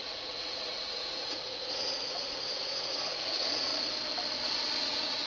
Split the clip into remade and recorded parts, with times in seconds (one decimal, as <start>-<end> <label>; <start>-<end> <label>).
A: 0.0-3.7 remade; 3.7-4.8 recorded; 4.8-5.3 remade